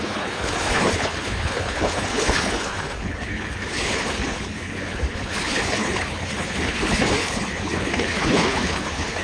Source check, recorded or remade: remade